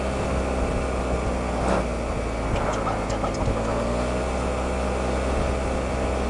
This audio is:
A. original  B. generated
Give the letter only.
A